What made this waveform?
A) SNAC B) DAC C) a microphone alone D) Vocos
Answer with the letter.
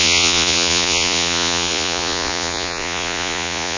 D